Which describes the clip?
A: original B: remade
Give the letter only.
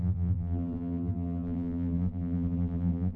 B